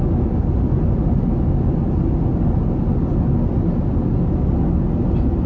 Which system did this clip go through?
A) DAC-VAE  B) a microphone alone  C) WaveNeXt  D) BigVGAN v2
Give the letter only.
B